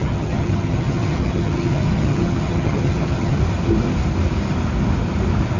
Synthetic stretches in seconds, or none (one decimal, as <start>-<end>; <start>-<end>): 0.0-3.4